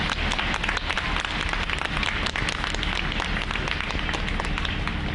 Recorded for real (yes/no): yes